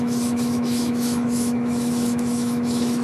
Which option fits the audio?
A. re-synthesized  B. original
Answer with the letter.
A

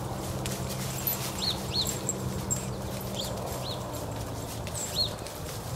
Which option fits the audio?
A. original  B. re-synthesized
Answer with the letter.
A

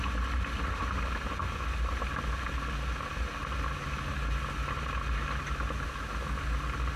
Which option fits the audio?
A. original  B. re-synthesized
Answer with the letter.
A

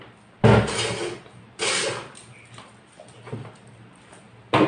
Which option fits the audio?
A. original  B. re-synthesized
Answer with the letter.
A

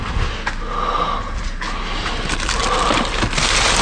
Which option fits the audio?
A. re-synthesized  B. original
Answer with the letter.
B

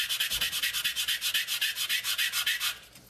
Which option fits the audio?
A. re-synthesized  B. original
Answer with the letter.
B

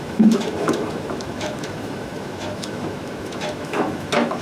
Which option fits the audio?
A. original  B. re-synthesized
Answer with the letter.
B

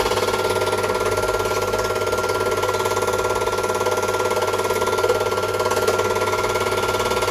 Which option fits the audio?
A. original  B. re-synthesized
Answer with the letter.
A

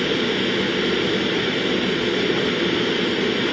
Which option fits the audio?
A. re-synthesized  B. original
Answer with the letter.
B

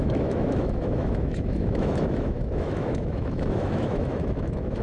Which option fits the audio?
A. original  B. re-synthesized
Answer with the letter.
B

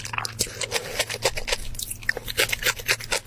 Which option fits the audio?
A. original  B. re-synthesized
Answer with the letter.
A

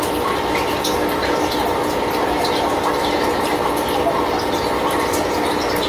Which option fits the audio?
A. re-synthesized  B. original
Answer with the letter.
B